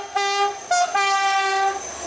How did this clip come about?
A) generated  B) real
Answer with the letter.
B